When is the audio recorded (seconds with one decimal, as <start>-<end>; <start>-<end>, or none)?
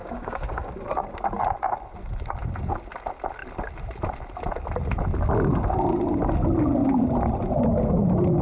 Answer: 0.7-8.4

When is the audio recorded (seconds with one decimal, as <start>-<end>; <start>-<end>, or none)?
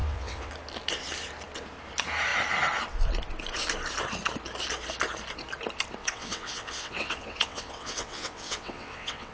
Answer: 0.5-6.0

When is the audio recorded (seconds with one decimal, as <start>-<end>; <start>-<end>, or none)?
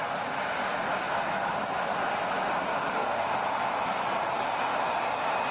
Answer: 0.0-2.7; 3.3-5.5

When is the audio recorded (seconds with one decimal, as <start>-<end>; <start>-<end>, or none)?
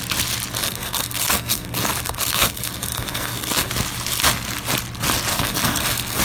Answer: 0.0-0.6; 3.7-5.3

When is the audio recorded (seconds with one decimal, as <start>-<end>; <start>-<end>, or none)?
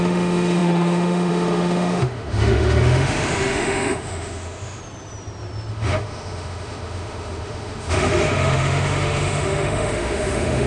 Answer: 4.8-5.7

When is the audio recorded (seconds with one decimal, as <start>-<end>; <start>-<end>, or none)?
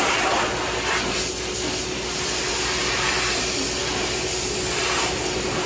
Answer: 0.0-5.7